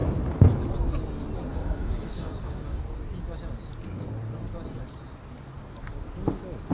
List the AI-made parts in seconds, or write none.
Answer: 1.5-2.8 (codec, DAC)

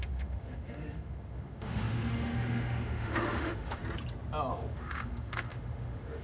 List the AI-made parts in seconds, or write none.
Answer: 0.0-3.8 (autoencoder, DAC-VAE); 4.5-6.2

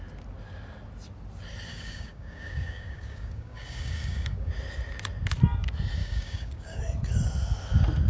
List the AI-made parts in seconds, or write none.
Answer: 1.7-4.5 (codec, DAC); 6.0-6.8

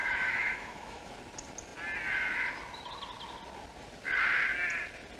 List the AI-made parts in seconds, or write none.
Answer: 0.0-1.1 (autoencoder, DAC-VAE)

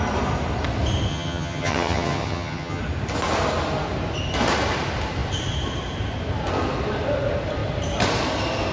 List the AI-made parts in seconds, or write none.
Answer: 1.1-2.8 (vocoder, HiFi-GAN)

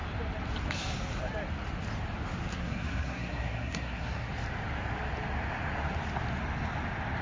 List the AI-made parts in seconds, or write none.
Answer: 2.5-4.3 (codec, SNAC)